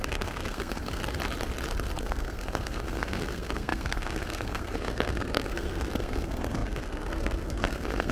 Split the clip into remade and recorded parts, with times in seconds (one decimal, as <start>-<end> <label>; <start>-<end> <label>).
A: 0.0-1.0 remade; 1.0-2.0 recorded; 2.0-8.1 remade